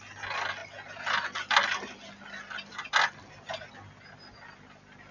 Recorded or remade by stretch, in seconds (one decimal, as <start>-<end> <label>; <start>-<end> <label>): 0.0-5.1 recorded